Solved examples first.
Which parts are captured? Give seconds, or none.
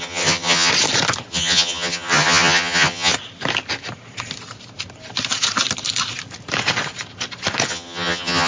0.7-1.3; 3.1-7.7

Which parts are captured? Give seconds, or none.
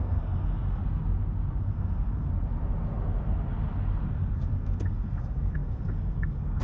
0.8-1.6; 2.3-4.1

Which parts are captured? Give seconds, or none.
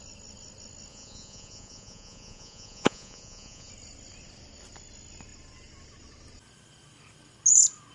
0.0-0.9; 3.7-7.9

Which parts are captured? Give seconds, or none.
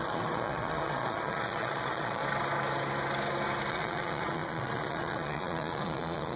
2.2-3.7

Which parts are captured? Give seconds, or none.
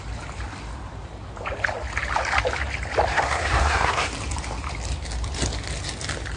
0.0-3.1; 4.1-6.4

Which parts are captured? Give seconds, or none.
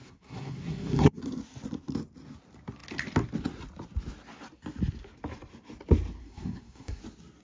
1.2-6.2; 7.0-7.4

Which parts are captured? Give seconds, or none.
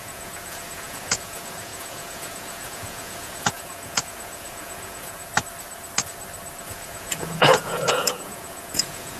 5.3-6.6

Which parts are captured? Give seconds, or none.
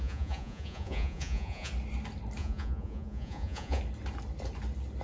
1.7-2.4; 3.8-5.0